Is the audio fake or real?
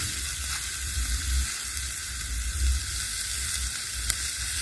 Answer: real